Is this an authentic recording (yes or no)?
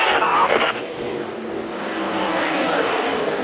no